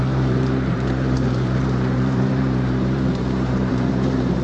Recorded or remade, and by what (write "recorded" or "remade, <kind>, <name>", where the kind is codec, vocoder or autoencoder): remade, vocoder, BigVGAN v2